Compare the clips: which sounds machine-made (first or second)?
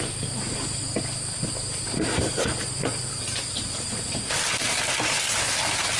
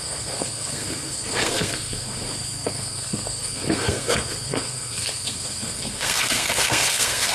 second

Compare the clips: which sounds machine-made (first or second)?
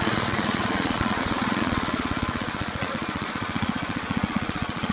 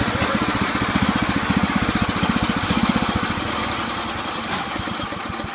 first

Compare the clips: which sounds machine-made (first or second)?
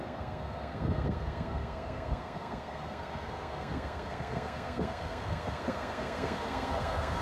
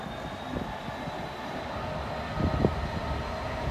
first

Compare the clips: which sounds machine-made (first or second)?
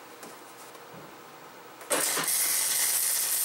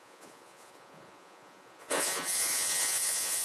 second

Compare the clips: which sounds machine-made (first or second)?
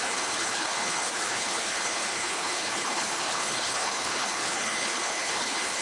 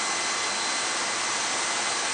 first